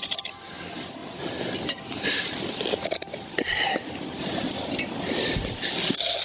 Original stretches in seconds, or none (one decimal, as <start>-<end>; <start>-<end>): 0.0-6.2